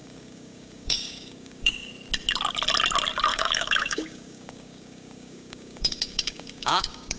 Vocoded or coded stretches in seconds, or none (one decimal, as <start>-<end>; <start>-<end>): 0.0-1.9; 3.3-7.2